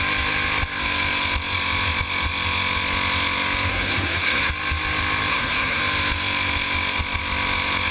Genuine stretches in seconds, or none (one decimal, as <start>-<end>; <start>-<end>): 0.0-3.7; 4.5-5.3; 5.8-7.9